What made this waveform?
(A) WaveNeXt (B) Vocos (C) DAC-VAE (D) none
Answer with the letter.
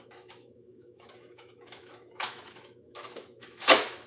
C